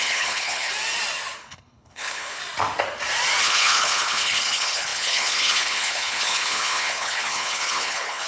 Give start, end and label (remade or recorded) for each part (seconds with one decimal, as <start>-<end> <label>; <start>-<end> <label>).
0.0-0.7 remade; 0.7-1.4 recorded; 1.4-2.4 remade; 2.4-3.4 recorded; 3.4-8.3 remade